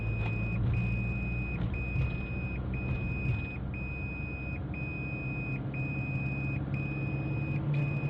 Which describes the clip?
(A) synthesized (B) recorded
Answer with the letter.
B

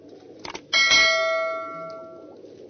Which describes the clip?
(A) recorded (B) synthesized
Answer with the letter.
A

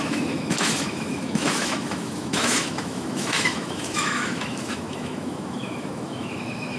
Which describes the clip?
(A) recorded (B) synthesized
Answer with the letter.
B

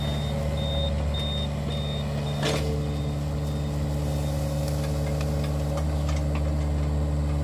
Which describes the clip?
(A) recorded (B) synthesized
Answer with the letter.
A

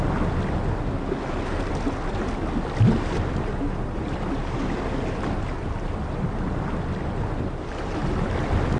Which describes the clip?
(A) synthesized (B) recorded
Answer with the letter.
B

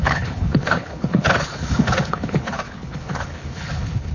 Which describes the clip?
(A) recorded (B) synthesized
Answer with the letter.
B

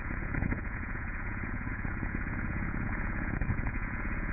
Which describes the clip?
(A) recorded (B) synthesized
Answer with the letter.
B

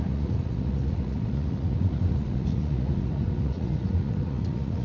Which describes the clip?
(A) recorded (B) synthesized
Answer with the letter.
B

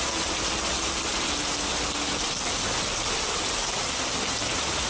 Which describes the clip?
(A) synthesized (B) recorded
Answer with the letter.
B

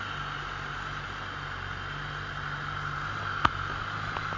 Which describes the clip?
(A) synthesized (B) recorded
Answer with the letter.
B